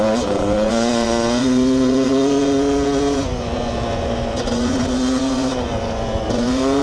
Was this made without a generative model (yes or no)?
no